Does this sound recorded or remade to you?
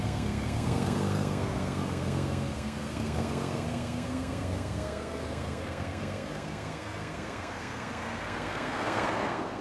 remade